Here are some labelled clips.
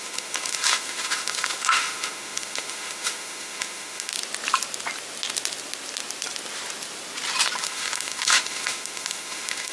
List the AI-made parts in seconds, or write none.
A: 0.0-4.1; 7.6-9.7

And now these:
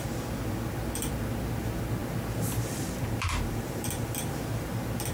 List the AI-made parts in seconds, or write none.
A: none

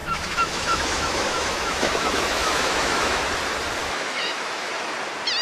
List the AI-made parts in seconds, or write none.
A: 0.0-3.2; 3.8-4.7

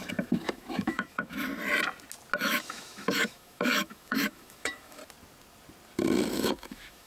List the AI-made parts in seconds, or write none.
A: 0.0-1.5; 2.4-5.0; 6.3-7.1

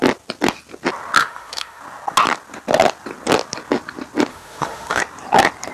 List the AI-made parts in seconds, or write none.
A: 1.2-1.8; 4.3-5.0